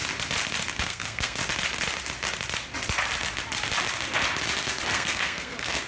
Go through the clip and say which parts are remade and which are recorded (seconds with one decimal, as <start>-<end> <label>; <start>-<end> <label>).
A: 0.0-0.8 recorded; 0.8-1.4 remade; 1.4-4.9 recorded; 4.9-5.9 remade